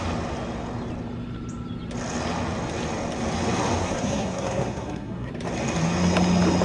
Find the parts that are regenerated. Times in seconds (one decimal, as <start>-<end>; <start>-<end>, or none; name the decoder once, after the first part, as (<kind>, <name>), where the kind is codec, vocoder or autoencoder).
3.8-5.3 (codec, SNAC)